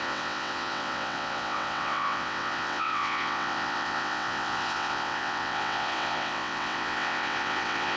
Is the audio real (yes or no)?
no